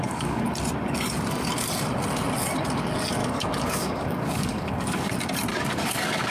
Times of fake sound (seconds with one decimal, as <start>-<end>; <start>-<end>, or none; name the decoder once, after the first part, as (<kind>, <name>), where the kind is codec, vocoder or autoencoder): 0.0-0.5 (codec, DAC); 3.2-5.1; 5.5-6.3